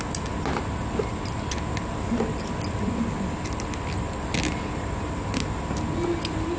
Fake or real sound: real